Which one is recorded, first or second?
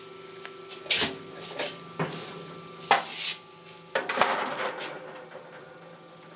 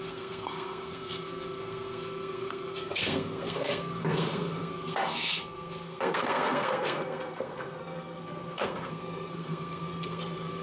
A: first